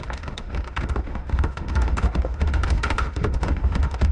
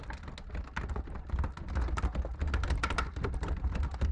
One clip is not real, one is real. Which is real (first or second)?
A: second